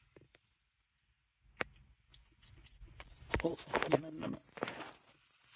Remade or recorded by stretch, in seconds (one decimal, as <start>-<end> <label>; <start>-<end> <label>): 0.0-2.1 recorded; 2.1-3.7 remade; 3.7-5.5 recorded